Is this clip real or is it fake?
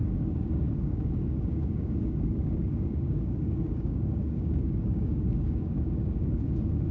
fake